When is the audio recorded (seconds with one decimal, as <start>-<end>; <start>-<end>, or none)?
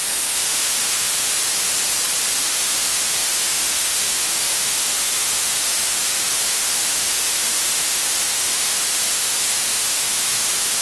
1.7-2.4